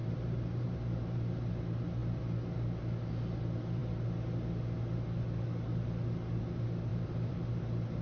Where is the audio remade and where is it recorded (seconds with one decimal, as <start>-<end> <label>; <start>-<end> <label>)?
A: 0.0-1.5 remade; 1.5-6.9 recorded; 6.9-7.6 remade; 7.6-8.0 recorded